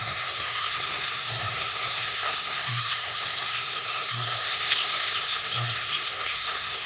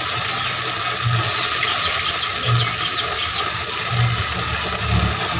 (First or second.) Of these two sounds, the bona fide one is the second